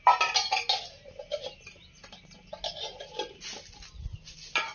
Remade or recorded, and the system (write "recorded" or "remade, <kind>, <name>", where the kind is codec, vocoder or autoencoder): recorded